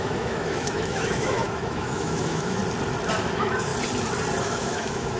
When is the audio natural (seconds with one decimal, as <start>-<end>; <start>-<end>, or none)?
2.6-3.3; 3.7-4.4